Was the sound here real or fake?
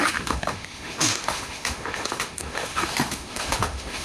fake